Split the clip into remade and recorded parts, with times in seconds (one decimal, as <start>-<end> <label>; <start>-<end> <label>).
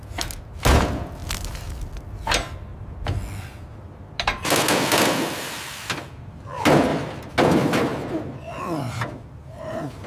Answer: 0.0-10.1 recorded